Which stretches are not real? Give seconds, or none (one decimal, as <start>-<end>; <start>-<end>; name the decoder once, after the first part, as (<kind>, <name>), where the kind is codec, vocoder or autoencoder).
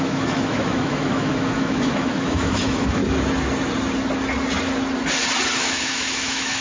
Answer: 0.0-3.0 (autoencoder, DAC-VAE); 5.6-6.6